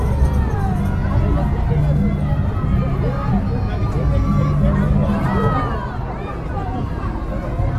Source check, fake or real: real